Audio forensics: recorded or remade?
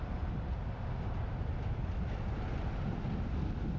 recorded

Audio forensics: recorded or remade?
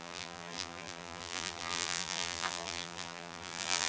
remade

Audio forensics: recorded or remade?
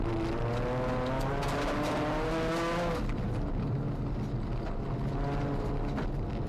recorded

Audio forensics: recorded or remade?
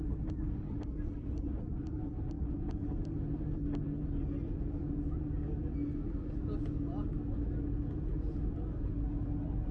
recorded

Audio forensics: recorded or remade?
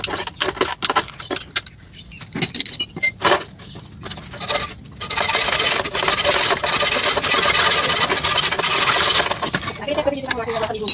recorded